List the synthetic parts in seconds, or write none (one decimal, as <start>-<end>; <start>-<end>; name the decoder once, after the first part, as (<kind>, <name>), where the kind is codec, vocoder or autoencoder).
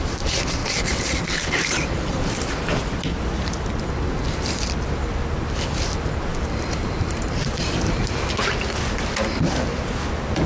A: 0.6-2.8 (vocoder, BigVGAN v2); 6.3-8.0